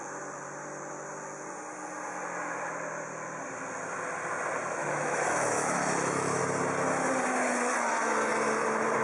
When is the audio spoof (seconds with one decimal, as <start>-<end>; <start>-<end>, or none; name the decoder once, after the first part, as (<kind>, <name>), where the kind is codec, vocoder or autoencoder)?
4.8-6.4 (autoencoder, DAC-VAE)